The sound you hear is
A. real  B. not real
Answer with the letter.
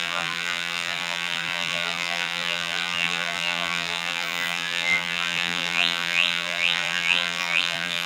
B